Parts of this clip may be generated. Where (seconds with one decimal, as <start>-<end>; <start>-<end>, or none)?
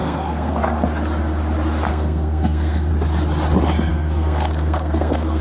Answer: 0.0-0.6; 1.9-2.9; 3.9-5.4